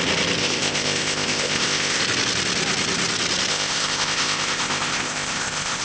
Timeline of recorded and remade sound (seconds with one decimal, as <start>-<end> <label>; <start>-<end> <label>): 0.0-0.4 recorded; 0.4-2.0 remade; 2.0-3.5 recorded; 3.5-5.8 remade